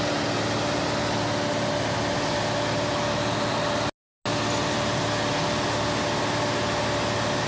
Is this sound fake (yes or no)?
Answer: no